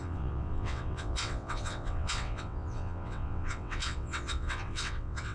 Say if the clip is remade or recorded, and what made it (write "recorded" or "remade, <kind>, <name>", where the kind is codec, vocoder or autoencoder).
remade, vocoder, WaveNeXt